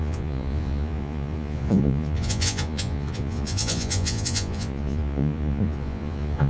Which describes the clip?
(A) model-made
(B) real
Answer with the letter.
A